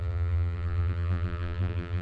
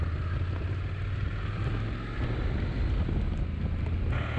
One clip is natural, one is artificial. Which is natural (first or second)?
second